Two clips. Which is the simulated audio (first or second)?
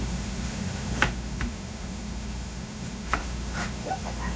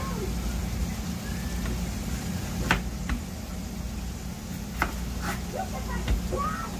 first